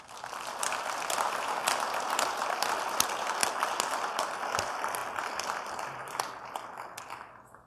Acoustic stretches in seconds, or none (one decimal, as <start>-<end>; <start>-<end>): 0.0-7.7